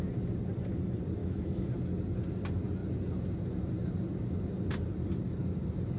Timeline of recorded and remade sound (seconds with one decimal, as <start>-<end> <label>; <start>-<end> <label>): 0.0-1.2 recorded; 1.2-1.7 remade; 1.7-6.0 recorded